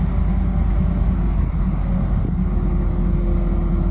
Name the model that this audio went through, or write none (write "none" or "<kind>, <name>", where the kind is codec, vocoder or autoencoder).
none